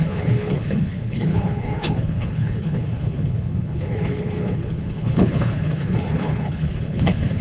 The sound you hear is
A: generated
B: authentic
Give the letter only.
A